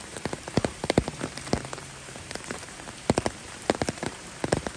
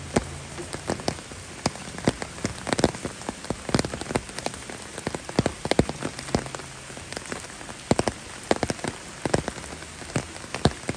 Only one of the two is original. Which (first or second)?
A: second